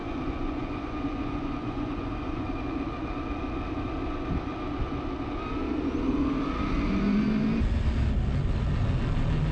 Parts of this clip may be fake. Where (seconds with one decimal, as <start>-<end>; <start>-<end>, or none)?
0.0-2.5